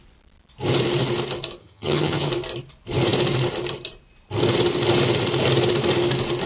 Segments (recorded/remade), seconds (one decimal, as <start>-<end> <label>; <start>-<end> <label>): 0.0-1.6 recorded; 1.6-2.3 remade; 2.3-6.5 recorded